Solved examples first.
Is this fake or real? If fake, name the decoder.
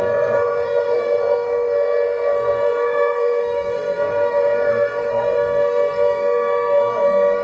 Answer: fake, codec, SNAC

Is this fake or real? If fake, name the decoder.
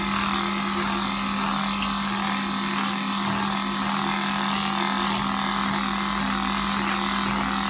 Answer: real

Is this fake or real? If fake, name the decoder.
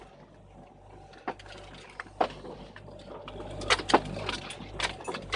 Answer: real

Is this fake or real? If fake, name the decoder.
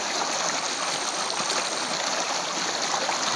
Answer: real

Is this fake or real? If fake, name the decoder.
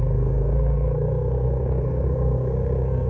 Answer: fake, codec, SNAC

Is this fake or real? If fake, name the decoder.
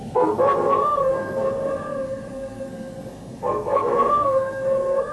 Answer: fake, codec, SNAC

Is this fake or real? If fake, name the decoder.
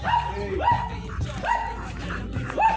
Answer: real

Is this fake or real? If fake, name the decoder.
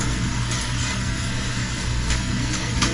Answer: fake, codec, SNAC